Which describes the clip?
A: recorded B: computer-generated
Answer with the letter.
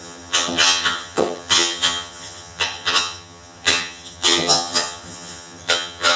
B